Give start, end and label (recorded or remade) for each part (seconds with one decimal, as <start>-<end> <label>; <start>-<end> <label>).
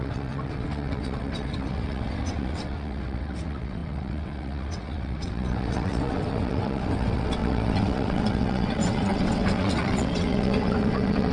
0.0-11.3 remade